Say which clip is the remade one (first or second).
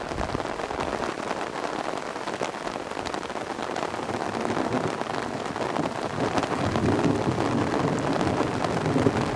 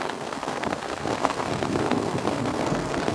second